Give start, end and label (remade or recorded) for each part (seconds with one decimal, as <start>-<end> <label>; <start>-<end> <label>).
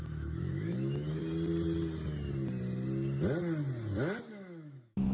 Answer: 0.0-1.2 remade; 1.2-4.3 recorded; 4.3-5.1 remade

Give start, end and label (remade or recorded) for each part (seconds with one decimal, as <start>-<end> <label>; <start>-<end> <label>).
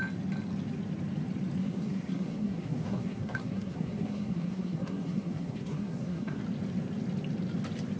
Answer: 0.0-1.6 recorded; 1.6-6.4 remade; 6.4-8.0 recorded